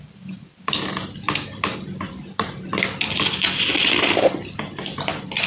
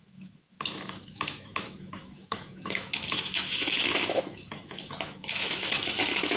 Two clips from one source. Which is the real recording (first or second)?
first